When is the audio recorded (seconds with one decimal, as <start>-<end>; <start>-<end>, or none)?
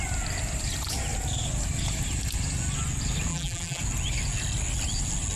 0.0-3.3; 3.8-5.4